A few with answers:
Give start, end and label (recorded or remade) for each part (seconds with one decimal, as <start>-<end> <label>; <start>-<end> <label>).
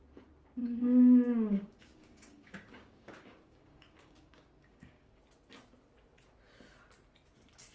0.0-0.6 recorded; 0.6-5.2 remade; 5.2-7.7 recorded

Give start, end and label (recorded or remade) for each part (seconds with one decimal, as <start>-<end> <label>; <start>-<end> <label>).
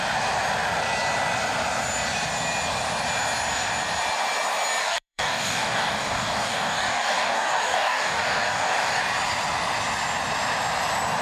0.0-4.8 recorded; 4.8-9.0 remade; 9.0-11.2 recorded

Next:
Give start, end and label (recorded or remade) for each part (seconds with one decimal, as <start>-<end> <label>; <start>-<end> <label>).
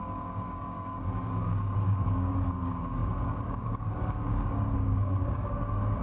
0.0-6.0 remade